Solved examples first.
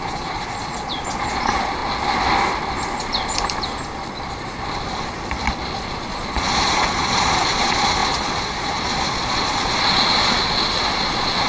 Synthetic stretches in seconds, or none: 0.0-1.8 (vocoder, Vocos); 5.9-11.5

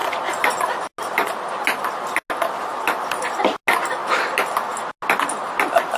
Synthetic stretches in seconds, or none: none

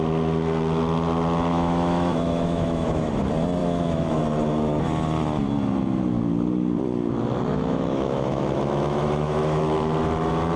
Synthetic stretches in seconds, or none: 1.5-3.1 (autoencoder, DAC-VAE); 3.6-4.2; 7.5-9.6